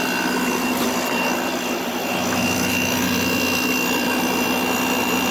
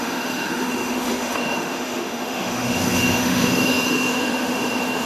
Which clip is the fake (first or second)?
second